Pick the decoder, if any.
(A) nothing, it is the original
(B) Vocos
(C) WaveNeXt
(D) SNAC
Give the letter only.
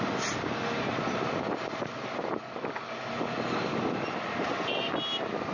A